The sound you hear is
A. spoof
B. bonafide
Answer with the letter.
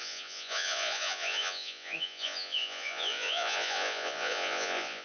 A